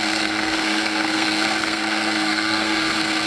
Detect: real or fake fake